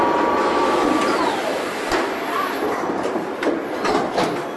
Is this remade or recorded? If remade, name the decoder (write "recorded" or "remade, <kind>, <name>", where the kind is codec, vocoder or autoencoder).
recorded